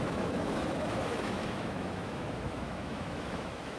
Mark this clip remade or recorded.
remade